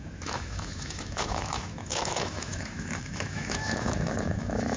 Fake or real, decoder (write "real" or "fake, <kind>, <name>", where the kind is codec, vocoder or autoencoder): fake, autoencoder, DAC-VAE